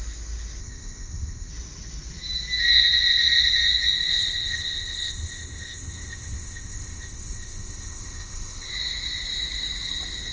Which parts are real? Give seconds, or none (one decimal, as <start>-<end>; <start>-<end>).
0.0-0.6; 1.5-4.1; 8.7-10.3